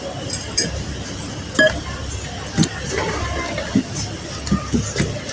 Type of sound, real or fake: real